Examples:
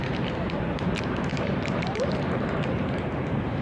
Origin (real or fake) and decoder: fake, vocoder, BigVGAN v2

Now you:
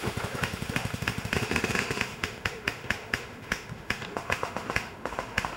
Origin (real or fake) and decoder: fake, autoencoder, DAC-VAE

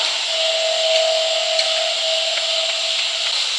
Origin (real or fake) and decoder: real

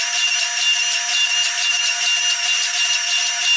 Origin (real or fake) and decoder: real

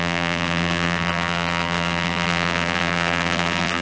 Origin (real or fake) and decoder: fake, vocoder, BigVGAN v2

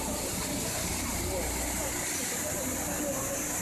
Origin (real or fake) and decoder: real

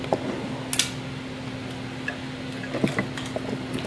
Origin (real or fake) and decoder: real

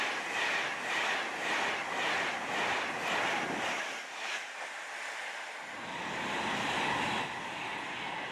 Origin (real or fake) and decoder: real